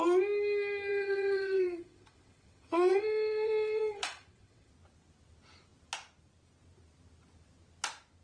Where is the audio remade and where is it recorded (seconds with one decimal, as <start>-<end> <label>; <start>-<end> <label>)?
0.0-0.9 recorded; 0.9-4.7 remade; 4.7-8.2 recorded